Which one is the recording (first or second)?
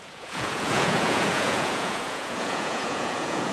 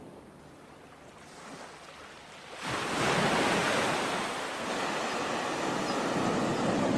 second